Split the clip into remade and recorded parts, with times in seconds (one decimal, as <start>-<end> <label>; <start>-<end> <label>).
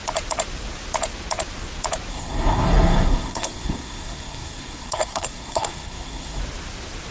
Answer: 0.0-2.1 recorded; 2.1-6.4 remade; 6.4-7.1 recorded